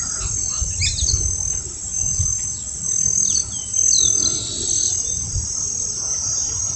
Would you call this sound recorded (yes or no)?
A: yes